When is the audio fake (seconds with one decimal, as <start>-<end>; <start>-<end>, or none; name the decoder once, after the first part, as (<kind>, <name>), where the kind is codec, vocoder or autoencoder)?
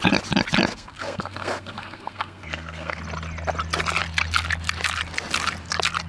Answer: 0.7-3.0 (codec, SNAC)